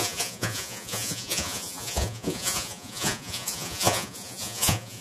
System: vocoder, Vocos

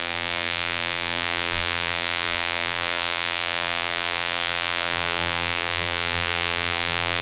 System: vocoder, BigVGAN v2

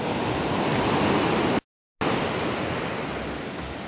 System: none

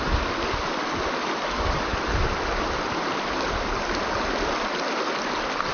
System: none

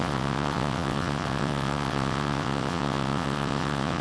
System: vocoder, WaveNeXt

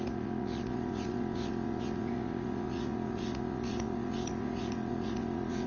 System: vocoder, Vocos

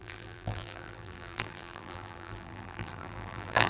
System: vocoder, BigVGAN v2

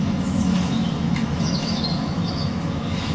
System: autoencoder, DAC-VAE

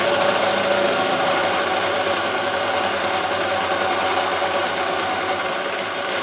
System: vocoder, BigVGAN v2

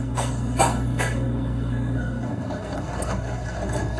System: codec, SNAC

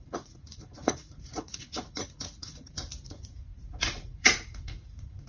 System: vocoder, Vocos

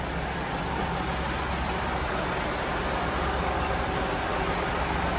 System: none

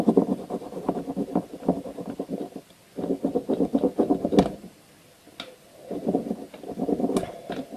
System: none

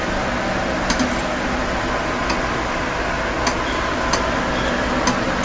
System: none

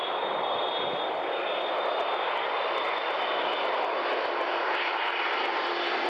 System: none